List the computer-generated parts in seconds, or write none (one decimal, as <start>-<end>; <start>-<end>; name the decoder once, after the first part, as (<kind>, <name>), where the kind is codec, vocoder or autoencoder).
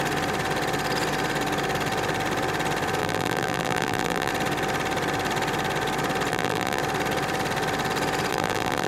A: 3.0-4.3 (vocoder, BigVGAN v2); 6.3-6.8; 8.3-8.9